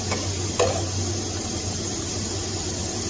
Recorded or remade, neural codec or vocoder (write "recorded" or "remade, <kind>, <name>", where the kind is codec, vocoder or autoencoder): recorded